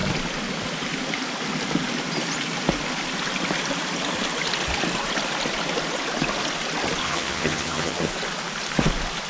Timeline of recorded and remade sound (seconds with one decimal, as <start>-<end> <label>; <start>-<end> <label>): 0.0-7.0 recorded; 7.0-8.1 remade; 8.1-9.3 recorded